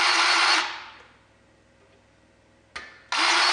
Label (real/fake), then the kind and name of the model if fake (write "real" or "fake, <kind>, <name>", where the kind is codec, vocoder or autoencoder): real